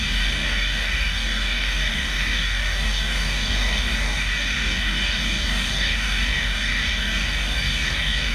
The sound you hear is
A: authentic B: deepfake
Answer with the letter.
B